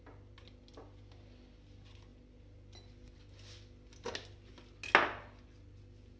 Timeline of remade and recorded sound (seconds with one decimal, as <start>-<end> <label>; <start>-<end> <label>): 0.0-6.2 recorded